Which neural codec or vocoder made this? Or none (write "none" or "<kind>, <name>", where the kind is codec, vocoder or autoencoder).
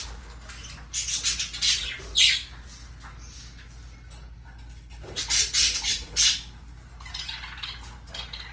none